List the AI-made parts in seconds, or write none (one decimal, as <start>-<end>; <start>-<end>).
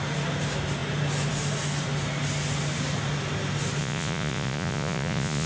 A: 3.8-5.5